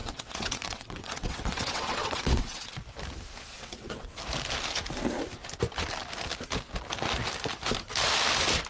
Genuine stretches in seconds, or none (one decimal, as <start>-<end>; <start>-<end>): 2.8-3.5; 4.2-8.7